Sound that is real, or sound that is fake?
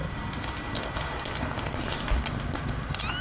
real